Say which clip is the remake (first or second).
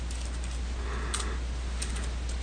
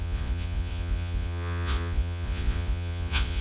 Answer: second